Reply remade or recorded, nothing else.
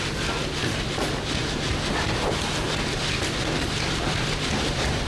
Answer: recorded